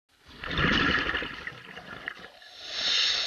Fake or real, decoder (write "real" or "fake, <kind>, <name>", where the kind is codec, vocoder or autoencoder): real